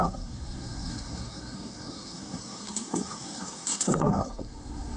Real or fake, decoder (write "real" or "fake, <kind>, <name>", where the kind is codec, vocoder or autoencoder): fake, codec, SNAC